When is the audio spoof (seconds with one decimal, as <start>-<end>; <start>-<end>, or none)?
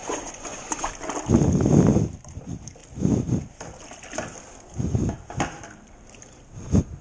0.0-0.9